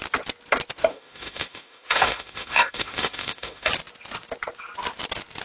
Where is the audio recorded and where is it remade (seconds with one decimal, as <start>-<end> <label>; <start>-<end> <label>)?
0.0-0.9 recorded; 0.9-3.7 remade; 3.7-5.4 recorded